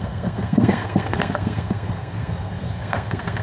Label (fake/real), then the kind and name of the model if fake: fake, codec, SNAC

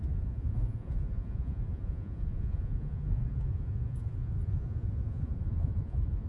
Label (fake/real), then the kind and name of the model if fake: fake, vocoder, Vocos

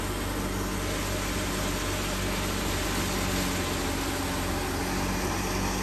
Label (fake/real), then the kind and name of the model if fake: real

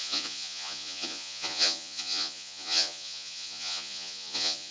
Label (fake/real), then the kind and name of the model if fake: fake, vocoder, Vocos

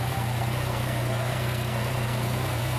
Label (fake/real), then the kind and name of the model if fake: fake, codec, SNAC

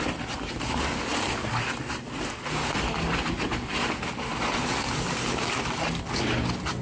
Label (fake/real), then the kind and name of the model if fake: real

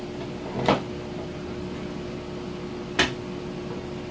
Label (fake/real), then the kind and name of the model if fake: real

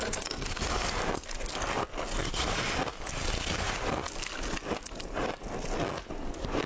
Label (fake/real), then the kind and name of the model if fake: real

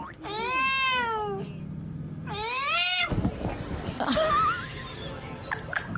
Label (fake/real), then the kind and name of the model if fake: real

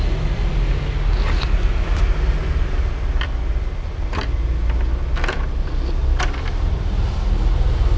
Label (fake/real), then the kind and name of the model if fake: real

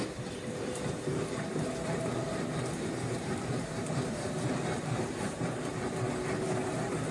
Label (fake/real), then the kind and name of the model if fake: fake, vocoder, BigVGAN v2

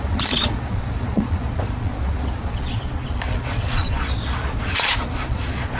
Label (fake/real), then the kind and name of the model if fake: fake, vocoder, Vocos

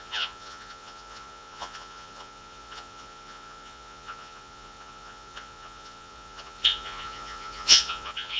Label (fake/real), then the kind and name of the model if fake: fake, vocoder, Vocos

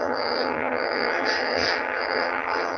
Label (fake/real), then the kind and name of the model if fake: fake, vocoder, HiFi-GAN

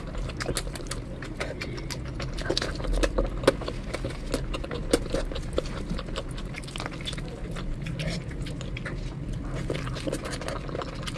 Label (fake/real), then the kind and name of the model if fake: real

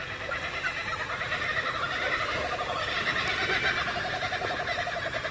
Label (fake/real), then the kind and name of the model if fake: real